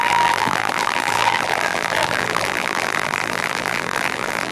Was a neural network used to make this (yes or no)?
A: yes